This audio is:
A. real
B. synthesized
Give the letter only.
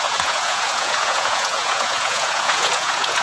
B